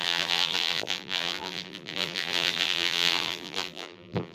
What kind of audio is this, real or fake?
fake